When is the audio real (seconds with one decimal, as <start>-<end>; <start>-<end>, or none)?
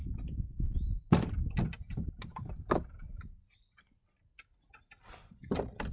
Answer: 0.0-5.9